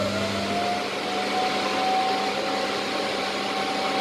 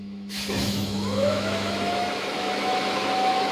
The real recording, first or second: first